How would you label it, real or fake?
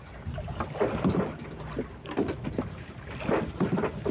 real